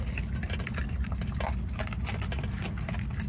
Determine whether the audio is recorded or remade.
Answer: recorded